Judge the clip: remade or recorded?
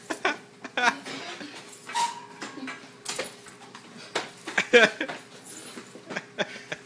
recorded